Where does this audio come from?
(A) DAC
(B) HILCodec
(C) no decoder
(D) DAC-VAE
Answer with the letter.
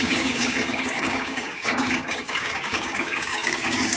A